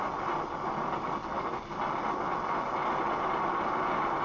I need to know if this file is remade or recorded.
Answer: recorded